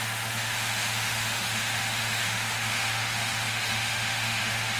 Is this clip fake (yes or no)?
yes